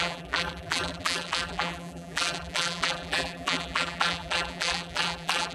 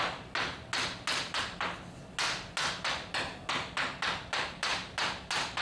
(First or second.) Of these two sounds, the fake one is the first